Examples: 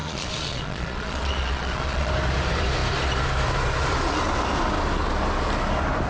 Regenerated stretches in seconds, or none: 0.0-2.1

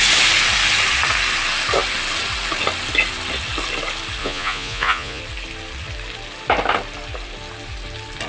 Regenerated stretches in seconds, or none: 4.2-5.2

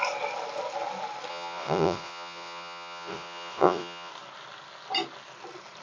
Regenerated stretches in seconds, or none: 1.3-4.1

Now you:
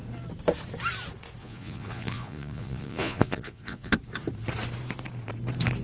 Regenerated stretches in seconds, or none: 1.4-3.9

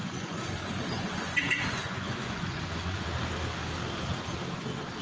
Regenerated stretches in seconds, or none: 0.0-3.0

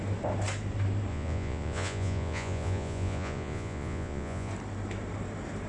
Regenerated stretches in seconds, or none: 1.1-4.5

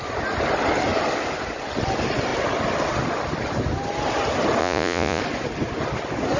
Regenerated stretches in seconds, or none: 4.6-5.2

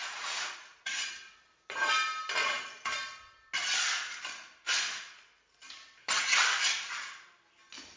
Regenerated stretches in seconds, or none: 0.0-1.4; 2.4-2.9